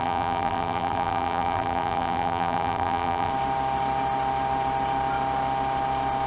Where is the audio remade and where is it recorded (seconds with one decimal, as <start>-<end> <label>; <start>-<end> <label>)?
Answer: 0.0-3.3 remade; 3.3-6.3 recorded